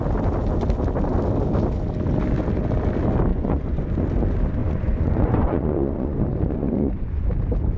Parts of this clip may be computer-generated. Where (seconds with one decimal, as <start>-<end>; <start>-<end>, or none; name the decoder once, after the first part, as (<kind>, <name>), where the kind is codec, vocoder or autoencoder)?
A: 3.3-3.9 (vocoder, Vocos); 4.6-7.3